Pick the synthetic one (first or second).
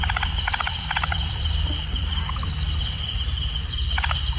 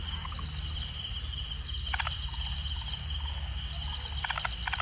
first